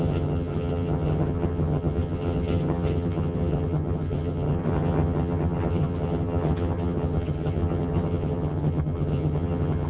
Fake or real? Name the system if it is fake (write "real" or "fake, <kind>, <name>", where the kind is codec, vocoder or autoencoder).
fake, vocoder, HiFi-GAN